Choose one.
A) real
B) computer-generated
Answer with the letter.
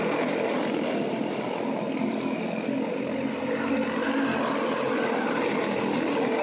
A